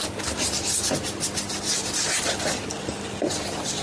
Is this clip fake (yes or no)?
no